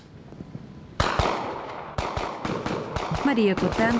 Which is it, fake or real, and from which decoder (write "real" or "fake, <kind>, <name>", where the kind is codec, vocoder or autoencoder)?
real